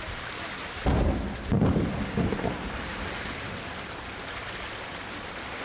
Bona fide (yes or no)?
yes